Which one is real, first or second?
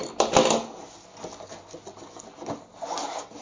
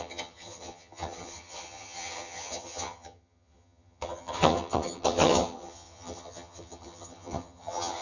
first